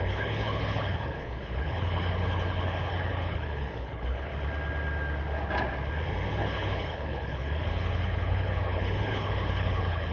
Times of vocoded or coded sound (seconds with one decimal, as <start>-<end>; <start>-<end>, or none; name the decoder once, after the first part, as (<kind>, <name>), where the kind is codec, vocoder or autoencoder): 0.0-4.3 (codec, HILCodec); 6.3-10.1